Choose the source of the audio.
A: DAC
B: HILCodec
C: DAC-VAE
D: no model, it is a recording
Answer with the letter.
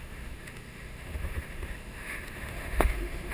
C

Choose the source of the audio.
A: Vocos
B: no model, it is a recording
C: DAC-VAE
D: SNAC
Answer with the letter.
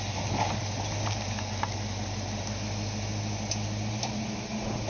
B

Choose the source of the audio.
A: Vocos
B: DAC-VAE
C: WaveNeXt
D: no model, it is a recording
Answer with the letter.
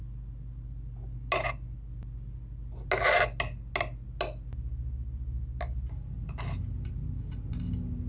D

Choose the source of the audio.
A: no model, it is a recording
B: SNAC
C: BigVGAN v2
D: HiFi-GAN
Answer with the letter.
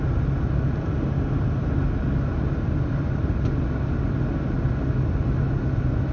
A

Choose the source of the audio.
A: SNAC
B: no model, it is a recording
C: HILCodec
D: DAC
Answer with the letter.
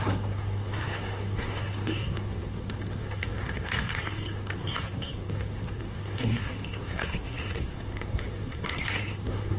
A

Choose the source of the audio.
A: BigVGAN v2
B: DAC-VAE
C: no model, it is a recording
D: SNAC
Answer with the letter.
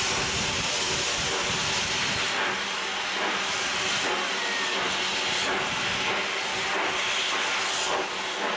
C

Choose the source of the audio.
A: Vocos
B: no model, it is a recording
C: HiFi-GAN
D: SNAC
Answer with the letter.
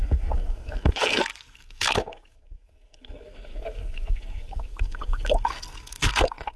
D